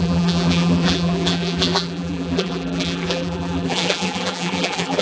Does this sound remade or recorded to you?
remade